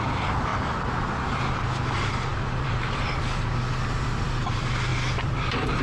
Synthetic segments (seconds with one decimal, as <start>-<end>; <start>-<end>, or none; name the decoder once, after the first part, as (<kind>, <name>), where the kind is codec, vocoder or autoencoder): 0.0-0.5 (vocoder, BigVGAN v2); 1.2-5.8